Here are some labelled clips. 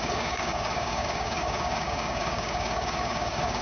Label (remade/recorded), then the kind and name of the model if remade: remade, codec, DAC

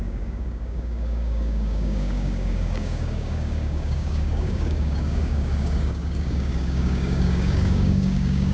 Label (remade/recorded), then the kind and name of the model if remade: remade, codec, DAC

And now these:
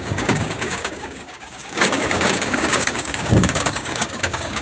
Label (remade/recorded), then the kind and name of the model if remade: remade, codec, DAC